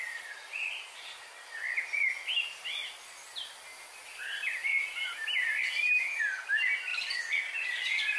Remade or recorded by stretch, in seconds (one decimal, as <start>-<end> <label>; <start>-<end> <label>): 0.0-8.2 recorded